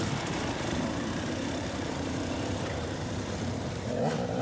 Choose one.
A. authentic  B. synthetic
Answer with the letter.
B